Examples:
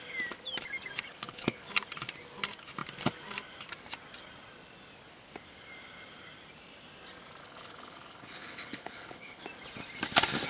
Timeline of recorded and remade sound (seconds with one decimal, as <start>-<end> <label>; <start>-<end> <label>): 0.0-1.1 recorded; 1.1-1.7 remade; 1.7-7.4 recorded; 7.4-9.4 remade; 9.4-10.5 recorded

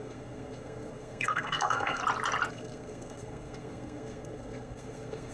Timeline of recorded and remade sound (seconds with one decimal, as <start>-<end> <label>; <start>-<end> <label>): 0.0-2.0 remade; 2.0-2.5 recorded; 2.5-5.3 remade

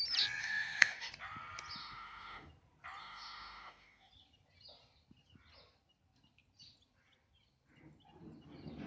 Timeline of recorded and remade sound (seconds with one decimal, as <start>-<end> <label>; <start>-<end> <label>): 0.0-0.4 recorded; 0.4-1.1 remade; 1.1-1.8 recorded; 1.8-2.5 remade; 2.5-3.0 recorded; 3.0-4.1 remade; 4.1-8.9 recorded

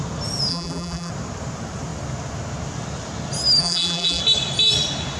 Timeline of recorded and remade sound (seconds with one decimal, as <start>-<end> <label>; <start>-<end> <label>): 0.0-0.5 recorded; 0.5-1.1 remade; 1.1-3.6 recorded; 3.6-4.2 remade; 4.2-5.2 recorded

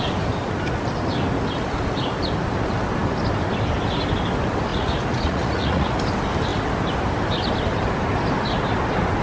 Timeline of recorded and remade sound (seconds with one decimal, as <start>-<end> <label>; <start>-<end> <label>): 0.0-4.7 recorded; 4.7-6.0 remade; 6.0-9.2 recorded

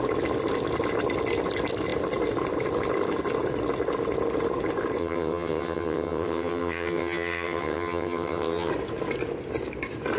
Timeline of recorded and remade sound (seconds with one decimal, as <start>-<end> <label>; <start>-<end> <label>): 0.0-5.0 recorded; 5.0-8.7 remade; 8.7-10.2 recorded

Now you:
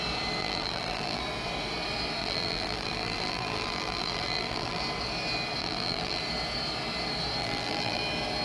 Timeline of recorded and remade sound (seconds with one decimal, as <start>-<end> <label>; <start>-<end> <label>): 0.0-0.4 recorded; 0.4-1.2 remade; 1.2-2.2 recorded; 2.2-4.8 remade; 4.8-5.6 recorded; 5.6-6.2 remade; 6.2-7.4 recorded; 7.4-8.0 remade; 8.0-8.4 recorded

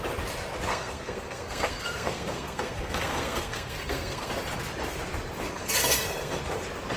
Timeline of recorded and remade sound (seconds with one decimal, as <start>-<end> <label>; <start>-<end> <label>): 0.0-0.7 recorded; 0.7-4.3 remade; 4.3-5.6 recorded; 5.6-6.4 remade; 6.4-7.0 recorded